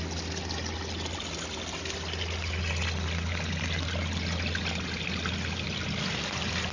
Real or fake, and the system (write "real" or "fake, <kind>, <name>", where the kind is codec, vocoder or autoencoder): real